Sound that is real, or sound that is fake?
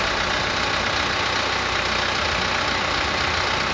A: real